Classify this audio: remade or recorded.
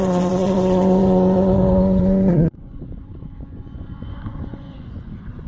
remade